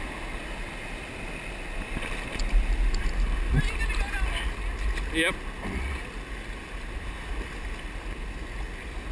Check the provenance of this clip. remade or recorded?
recorded